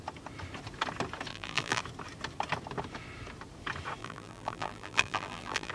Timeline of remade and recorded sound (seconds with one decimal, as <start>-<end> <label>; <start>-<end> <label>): 0.0-1.3 recorded; 1.3-1.8 remade; 1.8-4.0 recorded; 4.0-5.7 remade